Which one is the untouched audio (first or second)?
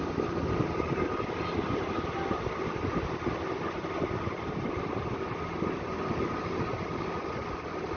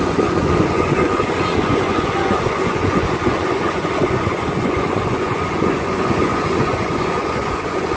first